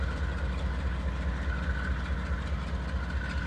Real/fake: real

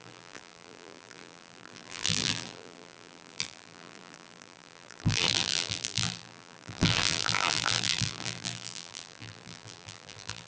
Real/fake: fake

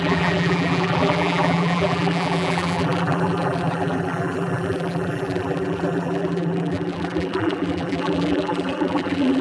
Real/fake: fake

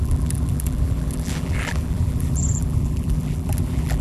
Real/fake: fake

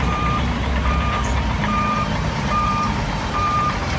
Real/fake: fake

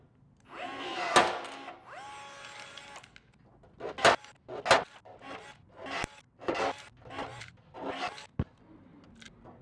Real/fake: real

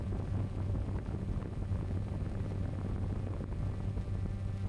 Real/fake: real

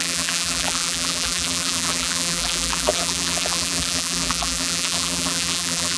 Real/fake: fake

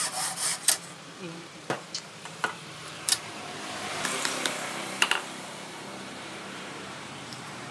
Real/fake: fake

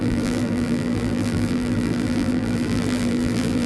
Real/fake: fake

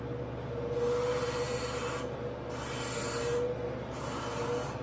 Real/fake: real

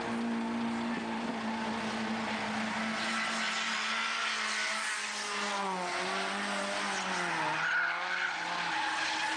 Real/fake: real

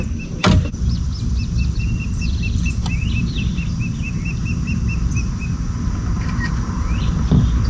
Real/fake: fake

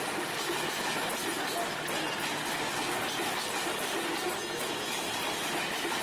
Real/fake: real